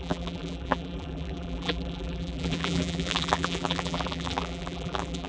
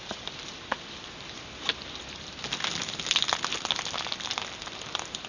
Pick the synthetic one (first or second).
first